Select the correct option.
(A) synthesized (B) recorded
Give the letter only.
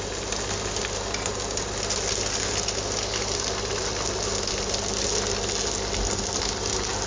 B